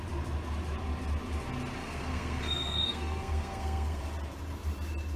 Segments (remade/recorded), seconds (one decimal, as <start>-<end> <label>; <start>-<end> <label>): 0.0-1.8 recorded; 1.8-4.0 remade; 4.0-5.2 recorded